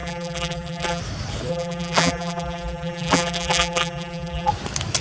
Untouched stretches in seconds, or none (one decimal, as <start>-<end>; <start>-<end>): 1.0-1.5; 4.5-5.0